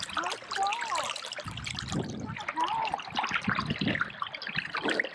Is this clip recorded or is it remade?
recorded